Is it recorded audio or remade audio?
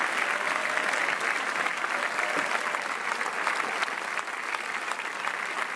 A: recorded